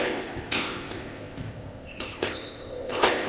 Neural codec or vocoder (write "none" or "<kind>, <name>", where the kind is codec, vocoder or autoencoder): codec, ZipCodec